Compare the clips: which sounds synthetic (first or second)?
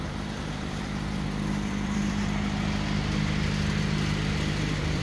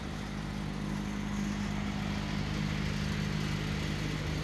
first